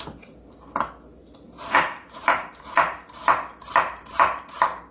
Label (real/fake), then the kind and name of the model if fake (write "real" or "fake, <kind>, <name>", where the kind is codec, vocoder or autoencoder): real